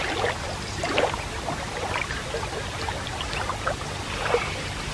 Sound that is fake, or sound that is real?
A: real